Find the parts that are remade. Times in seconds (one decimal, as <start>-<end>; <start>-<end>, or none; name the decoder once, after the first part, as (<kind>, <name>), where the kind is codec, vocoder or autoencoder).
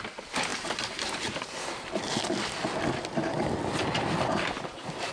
none